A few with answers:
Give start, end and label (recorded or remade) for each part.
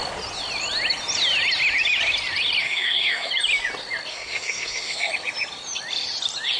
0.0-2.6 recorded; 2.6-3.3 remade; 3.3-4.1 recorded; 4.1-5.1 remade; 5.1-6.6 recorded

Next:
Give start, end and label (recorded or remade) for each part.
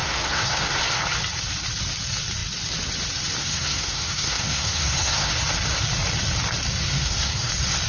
0.0-0.8 remade; 0.8-3.4 recorded; 3.4-5.3 remade; 5.3-6.8 recorded; 6.8-7.5 remade; 7.5-7.9 recorded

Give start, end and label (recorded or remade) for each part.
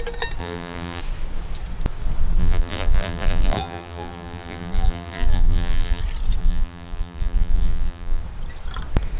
0.0-0.4 recorded; 0.4-1.0 remade; 1.0-2.4 recorded; 2.4-6.0 remade; 6.0-6.4 recorded; 6.4-8.2 remade; 8.2-9.2 recorded